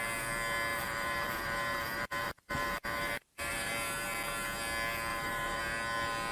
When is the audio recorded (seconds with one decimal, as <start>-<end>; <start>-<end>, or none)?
0.0-0.7; 3.7-5.1; 5.6-6.3